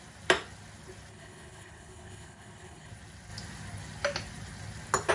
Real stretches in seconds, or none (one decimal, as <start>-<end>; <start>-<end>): 0.0-1.1; 2.9-5.1